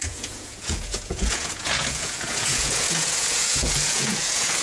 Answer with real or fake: fake